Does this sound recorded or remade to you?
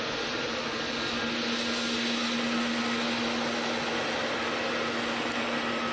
recorded